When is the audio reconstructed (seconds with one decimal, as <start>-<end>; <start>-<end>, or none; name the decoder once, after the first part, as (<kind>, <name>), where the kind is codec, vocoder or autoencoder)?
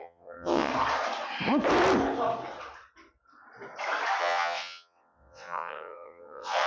0.0-0.7 (vocoder, WaveNeXt); 4.2-6.7